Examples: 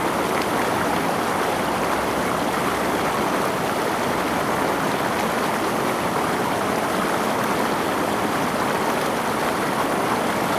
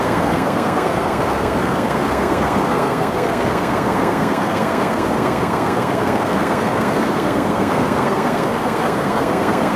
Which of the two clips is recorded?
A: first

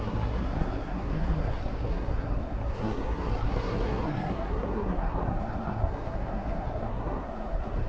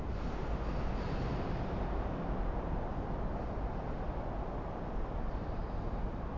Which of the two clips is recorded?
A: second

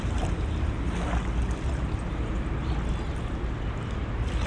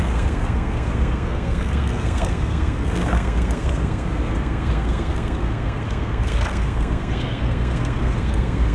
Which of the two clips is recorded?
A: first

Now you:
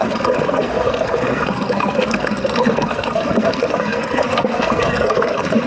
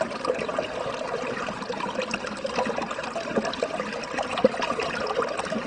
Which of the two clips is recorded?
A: second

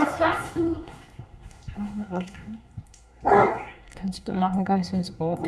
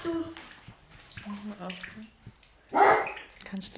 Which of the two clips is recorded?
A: second